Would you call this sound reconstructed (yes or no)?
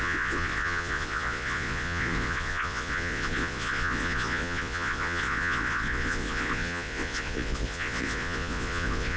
yes